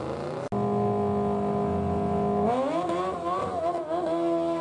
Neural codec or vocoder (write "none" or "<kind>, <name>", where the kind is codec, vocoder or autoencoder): none